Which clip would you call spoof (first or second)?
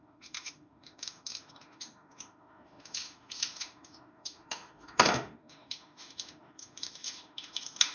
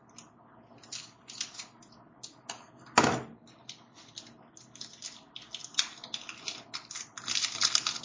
first